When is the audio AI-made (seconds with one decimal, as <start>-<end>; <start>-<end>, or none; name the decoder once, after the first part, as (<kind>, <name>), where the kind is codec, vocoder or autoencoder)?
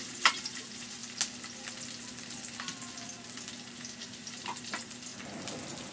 0.0-1.0 (vocoder, BigVGAN v2); 4.0-5.1